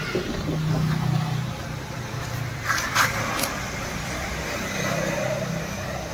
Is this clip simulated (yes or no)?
no